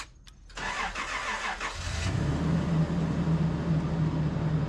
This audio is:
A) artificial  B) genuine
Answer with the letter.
B